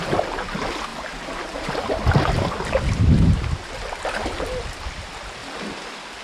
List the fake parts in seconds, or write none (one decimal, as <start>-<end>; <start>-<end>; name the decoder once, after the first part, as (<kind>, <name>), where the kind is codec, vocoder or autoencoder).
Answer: 0.9-4.6 (vocoder, BigVGAN v2); 5.4-6.2